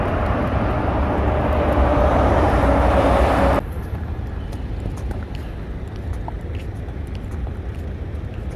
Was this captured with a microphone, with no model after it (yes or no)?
yes